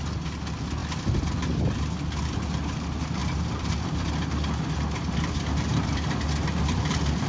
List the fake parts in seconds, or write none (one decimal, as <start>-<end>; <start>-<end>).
0.8-1.8; 3.2-7.3

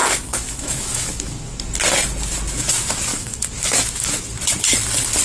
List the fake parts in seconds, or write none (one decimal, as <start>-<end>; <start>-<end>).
0.0-1.6; 3.1-4.2

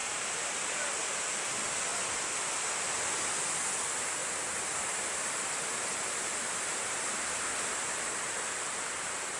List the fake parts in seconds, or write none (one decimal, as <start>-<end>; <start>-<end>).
0.0-0.8; 4.2-9.4

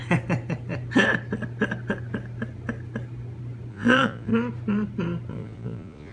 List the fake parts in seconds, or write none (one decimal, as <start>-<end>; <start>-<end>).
3.7-4.3; 5.3-6.1

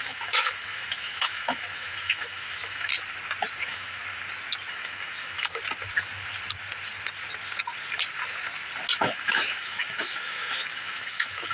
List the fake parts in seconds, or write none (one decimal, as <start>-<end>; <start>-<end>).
0.0-2.9; 3.6-4.0; 4.7-5.5; 9.0-11.5

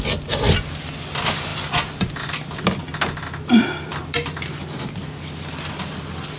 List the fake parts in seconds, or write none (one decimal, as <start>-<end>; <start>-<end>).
1.5-2.6; 3.9-4.6

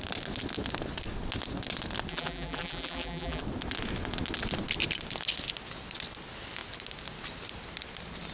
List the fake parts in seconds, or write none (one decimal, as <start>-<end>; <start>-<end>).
2.1-3.4

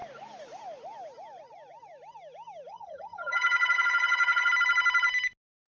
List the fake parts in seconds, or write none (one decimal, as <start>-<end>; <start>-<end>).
2.7-4.5